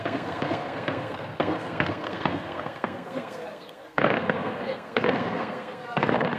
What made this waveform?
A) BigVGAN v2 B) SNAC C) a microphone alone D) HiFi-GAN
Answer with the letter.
B